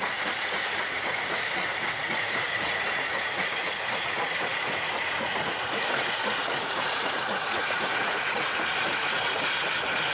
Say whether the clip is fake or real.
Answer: fake